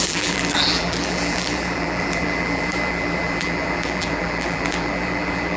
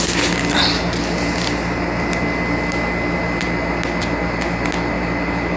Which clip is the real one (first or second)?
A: second